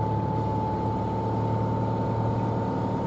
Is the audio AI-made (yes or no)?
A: no